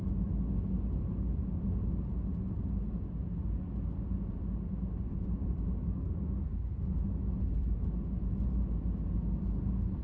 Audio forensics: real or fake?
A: real